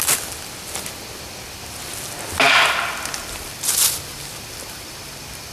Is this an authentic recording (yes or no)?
yes